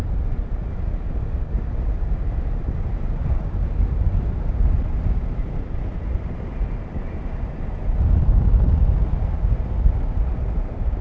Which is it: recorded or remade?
recorded